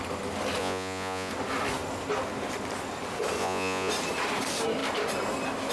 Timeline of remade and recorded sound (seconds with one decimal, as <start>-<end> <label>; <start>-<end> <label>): 0.0-0.6 recorded; 0.6-1.3 remade; 1.3-3.4 recorded; 3.4-3.9 remade; 3.9-5.7 recorded